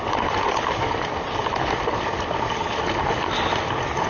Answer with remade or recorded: recorded